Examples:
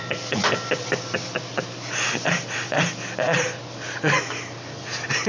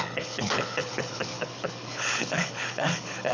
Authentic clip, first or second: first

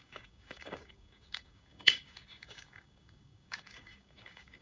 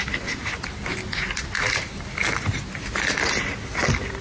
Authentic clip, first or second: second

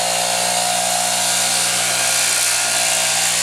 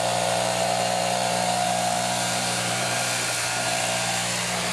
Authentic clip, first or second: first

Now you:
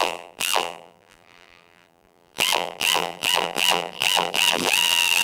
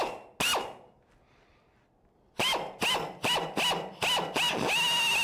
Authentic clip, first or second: second